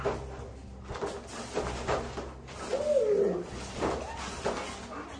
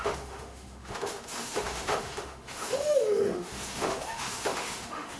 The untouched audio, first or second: first